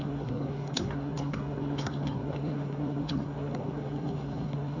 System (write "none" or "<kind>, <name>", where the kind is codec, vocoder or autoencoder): codec, SNAC